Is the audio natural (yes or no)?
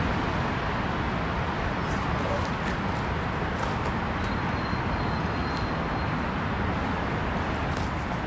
yes